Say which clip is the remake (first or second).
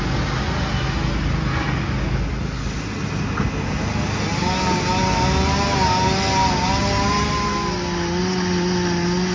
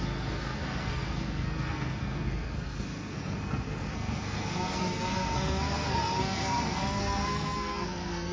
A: second